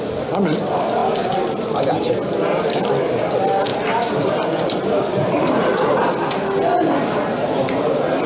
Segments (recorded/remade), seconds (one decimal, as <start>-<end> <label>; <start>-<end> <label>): 0.0-3.7 recorded; 3.7-6.1 remade; 6.1-8.3 recorded